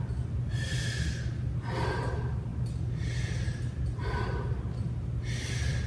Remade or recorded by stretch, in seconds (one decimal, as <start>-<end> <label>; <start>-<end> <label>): 0.0-5.9 recorded